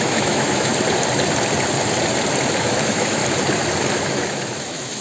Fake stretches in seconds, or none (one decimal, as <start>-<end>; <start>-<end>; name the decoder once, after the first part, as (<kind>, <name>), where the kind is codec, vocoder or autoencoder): 0.0-0.7 (autoencoder, DAC-VAE); 2.6-3.2; 4.0-5.0